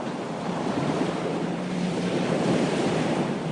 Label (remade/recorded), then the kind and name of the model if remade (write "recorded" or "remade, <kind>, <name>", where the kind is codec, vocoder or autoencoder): remade, vocoder, BigVGAN v2